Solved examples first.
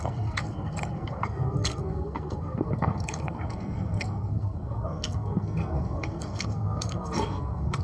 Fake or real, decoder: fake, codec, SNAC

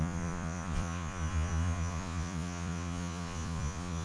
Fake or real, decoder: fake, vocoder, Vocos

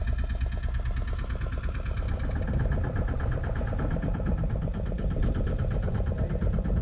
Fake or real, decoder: real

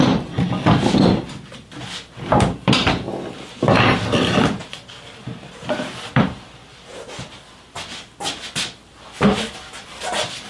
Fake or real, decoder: real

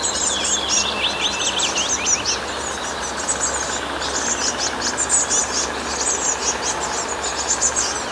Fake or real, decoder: real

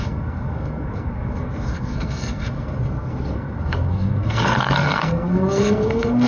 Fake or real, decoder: fake, codec, SNAC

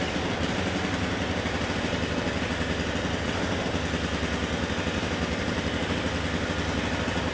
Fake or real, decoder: real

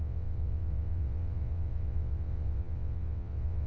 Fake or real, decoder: fake, vocoder, WaveNeXt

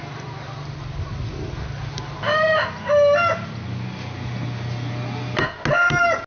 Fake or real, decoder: real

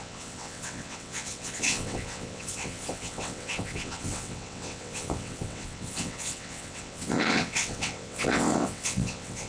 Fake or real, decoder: fake, vocoder, WaveNeXt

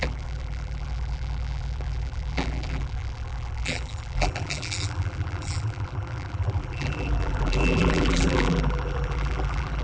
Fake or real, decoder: fake, vocoder, BigVGAN v2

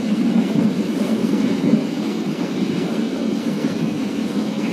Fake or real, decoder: fake, codec, SNAC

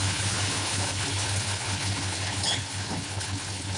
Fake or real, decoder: fake, codec, HILCodec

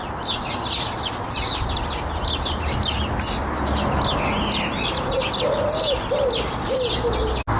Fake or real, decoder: real